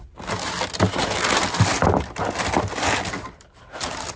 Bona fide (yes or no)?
yes